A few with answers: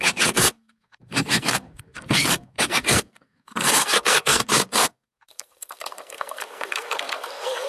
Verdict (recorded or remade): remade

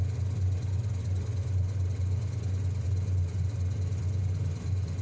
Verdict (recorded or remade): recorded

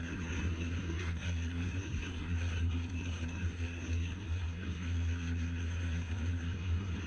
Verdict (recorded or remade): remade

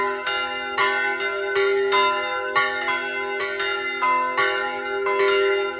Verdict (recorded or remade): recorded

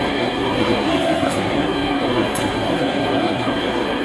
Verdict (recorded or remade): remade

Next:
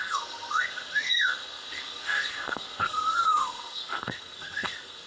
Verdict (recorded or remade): remade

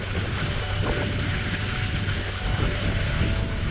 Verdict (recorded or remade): recorded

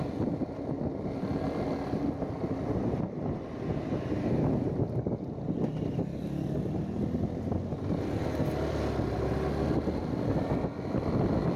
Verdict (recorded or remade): recorded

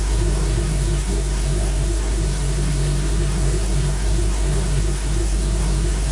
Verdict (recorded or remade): remade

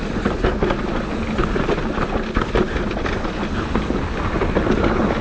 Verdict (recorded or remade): recorded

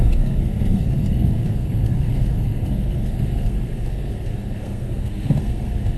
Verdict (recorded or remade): remade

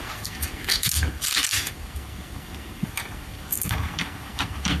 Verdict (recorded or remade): remade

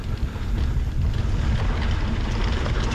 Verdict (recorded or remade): recorded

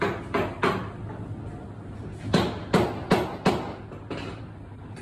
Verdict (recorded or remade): recorded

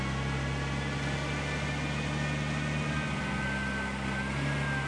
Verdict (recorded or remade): recorded